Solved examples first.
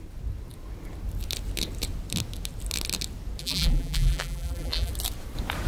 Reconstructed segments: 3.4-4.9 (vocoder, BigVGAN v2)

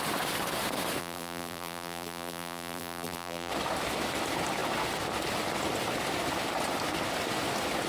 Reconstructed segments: 1.0-3.5 (vocoder, BigVGAN v2)

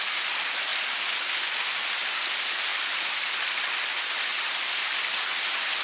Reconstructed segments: 2.7-3.5 (vocoder, BigVGAN v2); 4.3-5.1

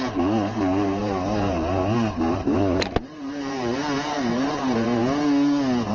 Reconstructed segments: 0.0-5.0 (vocoder, BigVGAN v2)

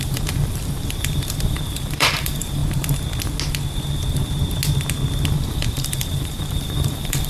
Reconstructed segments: 0.0-2.6 (vocoder, BigVGAN v2); 5.3-7.3

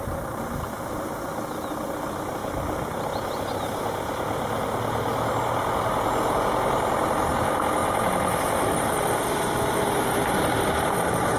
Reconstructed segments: 2.4-3.1 (vocoder, BigVGAN v2); 7.8-9.0